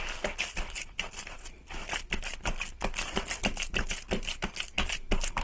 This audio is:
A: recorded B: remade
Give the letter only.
A